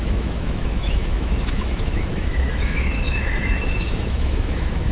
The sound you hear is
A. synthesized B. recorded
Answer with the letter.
A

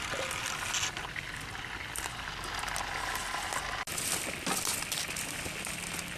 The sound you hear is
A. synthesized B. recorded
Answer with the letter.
B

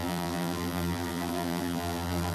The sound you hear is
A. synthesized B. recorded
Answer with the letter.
A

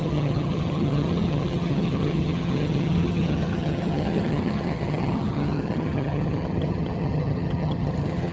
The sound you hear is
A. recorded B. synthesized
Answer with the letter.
B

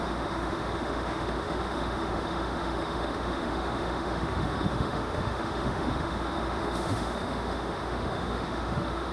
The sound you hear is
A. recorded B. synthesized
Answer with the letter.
B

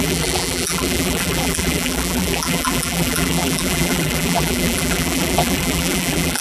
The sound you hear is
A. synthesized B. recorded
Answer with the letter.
A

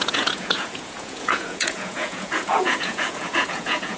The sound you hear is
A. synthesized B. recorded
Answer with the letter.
A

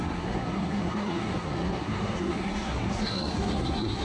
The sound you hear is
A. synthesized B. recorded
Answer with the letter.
A